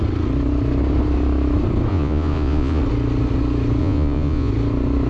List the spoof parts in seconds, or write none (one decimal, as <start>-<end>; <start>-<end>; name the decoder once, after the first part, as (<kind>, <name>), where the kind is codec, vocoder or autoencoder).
1.9-2.8 (vocoder, Vocos); 3.8-4.5

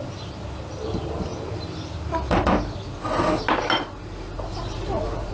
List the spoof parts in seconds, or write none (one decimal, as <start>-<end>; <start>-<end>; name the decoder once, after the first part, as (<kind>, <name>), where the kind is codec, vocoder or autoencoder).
none

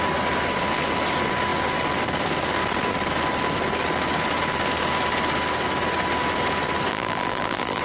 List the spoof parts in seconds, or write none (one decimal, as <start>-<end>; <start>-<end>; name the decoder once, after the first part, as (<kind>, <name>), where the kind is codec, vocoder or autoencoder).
6.9-7.8 (vocoder, BigVGAN v2)